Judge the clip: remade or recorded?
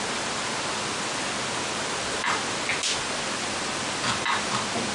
recorded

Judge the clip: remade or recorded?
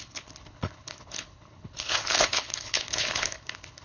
remade